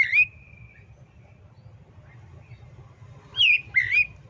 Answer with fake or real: real